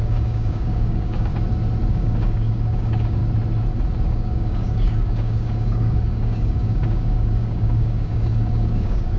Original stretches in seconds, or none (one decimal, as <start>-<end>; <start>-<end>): 1.3-1.9; 3.2-4.0